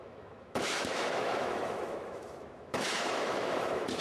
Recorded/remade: remade